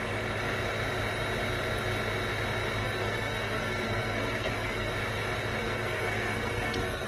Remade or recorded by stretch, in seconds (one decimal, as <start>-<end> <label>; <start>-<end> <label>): 0.0-2.8 recorded; 2.8-4.9 remade; 4.9-5.6 recorded; 5.6-7.1 remade